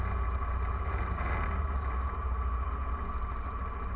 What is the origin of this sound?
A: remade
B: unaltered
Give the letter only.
B